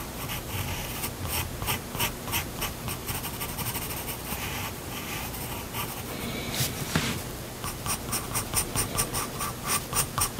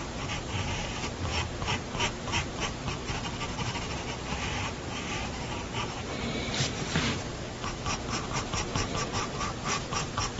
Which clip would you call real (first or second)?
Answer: first